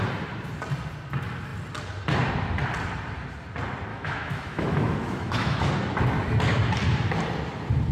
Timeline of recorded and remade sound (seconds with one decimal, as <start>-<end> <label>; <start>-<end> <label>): 0.0-3.9 recorded; 3.9-5.7 remade; 5.7-7.9 recorded